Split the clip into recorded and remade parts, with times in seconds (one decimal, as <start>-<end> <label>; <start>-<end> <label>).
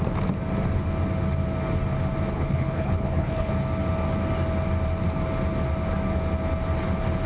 0.0-2.3 recorded; 2.3-3.5 remade; 3.5-7.3 recorded